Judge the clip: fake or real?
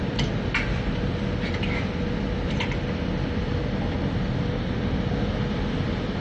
real